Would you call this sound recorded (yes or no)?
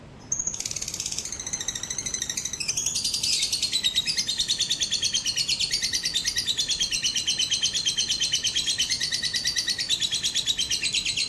yes